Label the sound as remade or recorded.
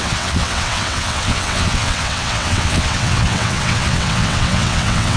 remade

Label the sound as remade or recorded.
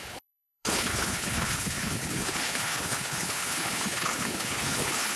remade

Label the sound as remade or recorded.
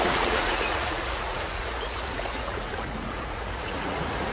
remade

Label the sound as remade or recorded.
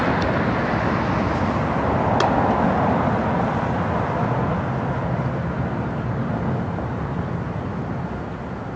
recorded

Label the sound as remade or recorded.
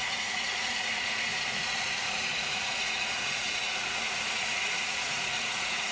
remade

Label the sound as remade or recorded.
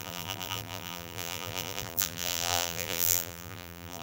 remade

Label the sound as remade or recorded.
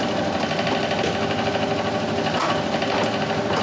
recorded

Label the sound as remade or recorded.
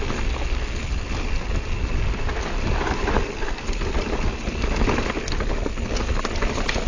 recorded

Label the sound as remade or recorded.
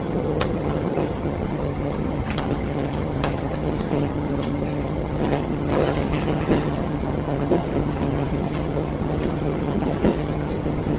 remade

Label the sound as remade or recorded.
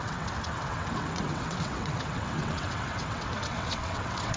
remade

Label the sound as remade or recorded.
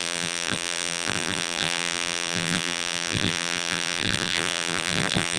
remade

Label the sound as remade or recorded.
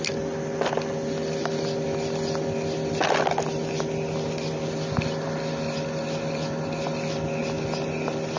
recorded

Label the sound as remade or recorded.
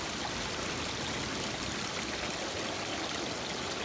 recorded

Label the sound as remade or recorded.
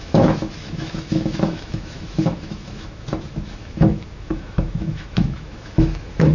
remade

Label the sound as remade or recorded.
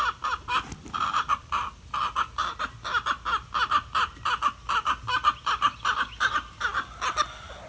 recorded